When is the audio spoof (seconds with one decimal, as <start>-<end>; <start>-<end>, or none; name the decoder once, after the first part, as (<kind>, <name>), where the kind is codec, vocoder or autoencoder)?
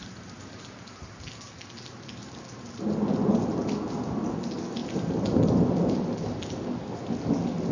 none